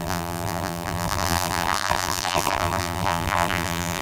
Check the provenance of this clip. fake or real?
fake